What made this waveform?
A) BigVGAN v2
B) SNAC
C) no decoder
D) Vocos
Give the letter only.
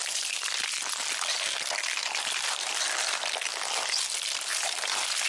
C